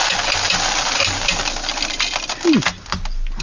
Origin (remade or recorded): recorded